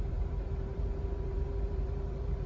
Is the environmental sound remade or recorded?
remade